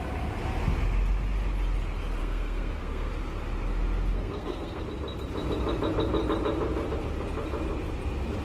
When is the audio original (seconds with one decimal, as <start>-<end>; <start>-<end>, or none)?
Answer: 0.0-2.2; 3.1-4.1; 4.8-8.4